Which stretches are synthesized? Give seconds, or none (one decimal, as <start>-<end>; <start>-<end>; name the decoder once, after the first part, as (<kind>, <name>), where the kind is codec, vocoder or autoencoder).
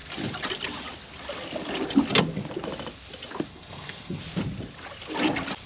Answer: 3.5-4.2 (codec, SNAC)